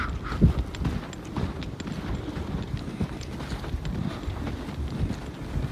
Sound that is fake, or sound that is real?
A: real